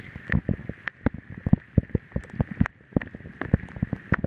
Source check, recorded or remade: recorded